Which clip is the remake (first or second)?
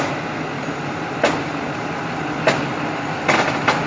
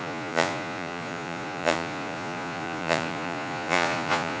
second